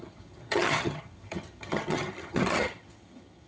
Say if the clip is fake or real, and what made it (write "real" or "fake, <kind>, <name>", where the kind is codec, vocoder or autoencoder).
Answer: fake, vocoder, HiFi-GAN